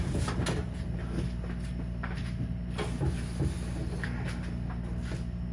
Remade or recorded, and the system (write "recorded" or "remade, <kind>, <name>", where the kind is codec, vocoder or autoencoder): recorded